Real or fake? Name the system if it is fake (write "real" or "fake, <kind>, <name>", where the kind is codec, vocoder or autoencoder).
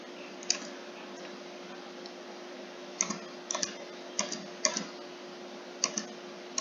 real